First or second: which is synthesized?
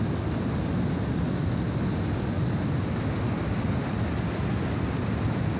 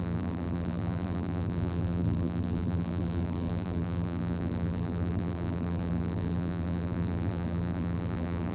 second